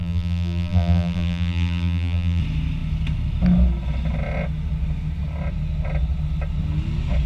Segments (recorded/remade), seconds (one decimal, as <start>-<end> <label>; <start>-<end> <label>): 0.0-2.4 remade; 2.4-7.3 recorded